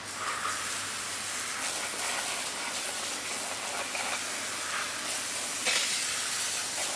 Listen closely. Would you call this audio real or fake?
real